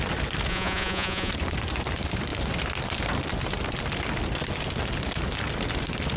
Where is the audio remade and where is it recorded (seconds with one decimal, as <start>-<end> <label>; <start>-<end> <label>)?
0.0-0.5 recorded; 0.5-1.3 remade; 1.3-6.2 recorded